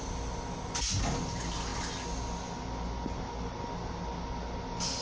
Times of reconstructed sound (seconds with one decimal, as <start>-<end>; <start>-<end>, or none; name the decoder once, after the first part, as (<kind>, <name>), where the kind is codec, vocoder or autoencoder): none